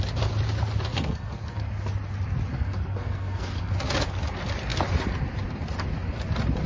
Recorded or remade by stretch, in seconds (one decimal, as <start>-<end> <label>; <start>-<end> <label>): 0.0-0.9 recorded; 0.9-1.7 remade; 1.7-2.5 recorded; 2.5-3.7 remade; 3.7-6.7 recorded

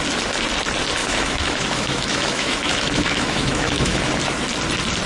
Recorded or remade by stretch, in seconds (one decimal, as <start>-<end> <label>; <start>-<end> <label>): 0.0-1.0 recorded; 1.0-4.1 remade; 4.1-5.1 recorded

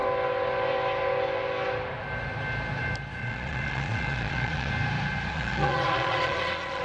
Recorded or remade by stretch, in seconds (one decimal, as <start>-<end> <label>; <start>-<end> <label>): 0.0-3.2 recorded; 3.2-4.7 remade; 4.7-5.3 recorded; 5.3-6.8 remade

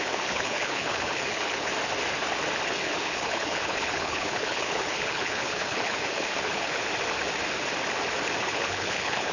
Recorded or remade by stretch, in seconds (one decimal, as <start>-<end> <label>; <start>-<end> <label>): 0.0-1.7 remade; 1.7-2.8 recorded; 2.8-6.8 remade; 6.8-8.4 recorded; 8.4-9.3 remade

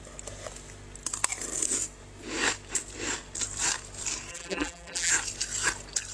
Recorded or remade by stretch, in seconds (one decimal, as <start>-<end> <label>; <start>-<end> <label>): 0.0-4.3 recorded; 4.3-5.1 remade; 5.1-6.1 recorded